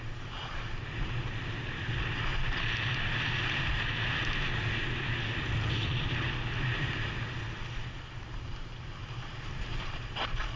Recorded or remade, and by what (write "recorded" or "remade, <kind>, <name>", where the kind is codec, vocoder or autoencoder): recorded